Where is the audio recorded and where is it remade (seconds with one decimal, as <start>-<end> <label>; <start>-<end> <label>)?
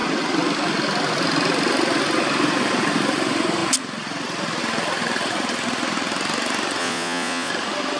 0.0-6.8 recorded; 6.8-7.5 remade; 7.5-8.0 recorded